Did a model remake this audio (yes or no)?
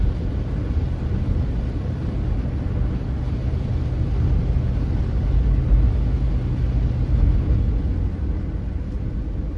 no